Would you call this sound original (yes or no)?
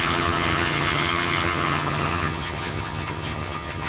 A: no